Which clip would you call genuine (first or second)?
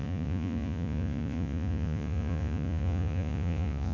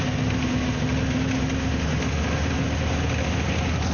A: second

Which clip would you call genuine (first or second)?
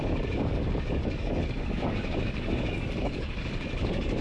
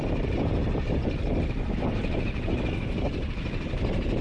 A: second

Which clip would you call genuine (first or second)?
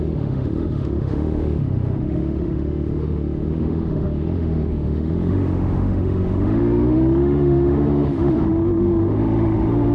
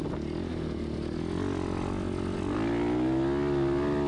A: second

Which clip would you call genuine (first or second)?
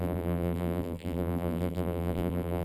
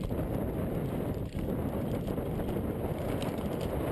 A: second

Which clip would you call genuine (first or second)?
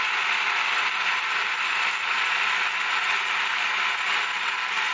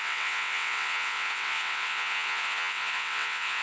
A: first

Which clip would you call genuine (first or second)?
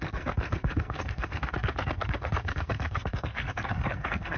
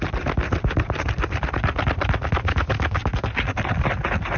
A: second